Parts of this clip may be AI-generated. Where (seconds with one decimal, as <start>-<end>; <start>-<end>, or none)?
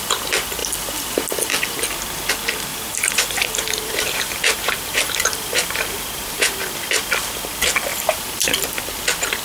2.7-6.7; 7.9-8.8